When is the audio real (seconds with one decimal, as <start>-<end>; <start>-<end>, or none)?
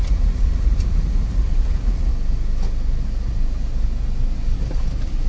2.1-5.3